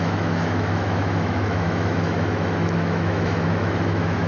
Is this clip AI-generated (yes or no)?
yes